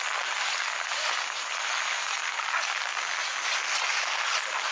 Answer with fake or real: real